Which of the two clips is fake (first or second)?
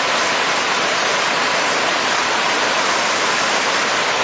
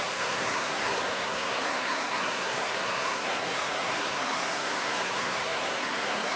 second